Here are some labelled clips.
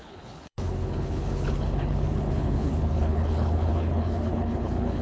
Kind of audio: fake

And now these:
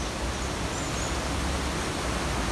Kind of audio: real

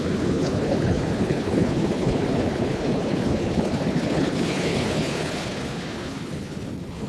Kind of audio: fake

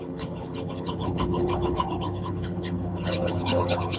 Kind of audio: fake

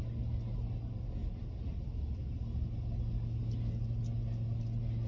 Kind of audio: real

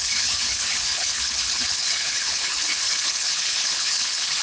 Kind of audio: fake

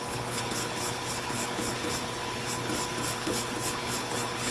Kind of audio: fake